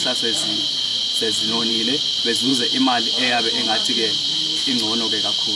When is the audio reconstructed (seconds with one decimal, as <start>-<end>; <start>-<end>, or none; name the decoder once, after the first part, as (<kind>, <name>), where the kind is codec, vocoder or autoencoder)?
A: none